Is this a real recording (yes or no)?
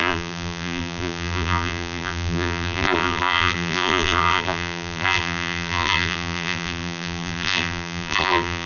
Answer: no